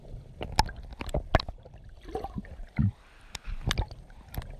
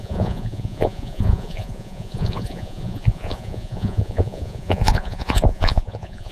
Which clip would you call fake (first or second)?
second